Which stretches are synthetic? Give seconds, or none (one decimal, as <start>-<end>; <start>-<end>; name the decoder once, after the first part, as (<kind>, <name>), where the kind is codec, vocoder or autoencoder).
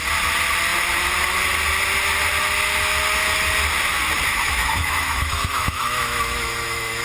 4.3-7.0 (autoencoder, DAC-VAE)